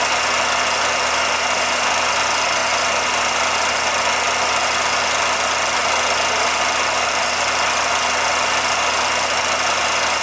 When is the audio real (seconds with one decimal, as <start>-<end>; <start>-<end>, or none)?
0.0-10.2